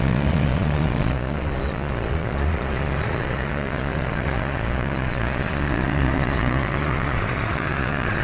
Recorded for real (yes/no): no